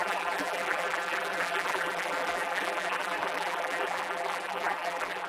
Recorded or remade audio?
remade